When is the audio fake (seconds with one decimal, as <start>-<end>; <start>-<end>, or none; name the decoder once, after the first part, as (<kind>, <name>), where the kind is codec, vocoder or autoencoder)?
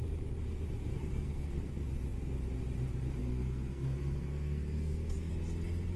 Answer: 0.9-1.7 (codec, SNAC); 3.2-5.3